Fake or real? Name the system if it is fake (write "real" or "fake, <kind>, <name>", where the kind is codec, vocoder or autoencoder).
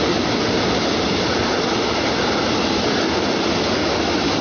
real